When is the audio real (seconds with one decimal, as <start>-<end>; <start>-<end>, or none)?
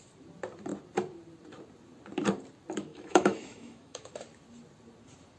0.0-2.9; 4.1-5.4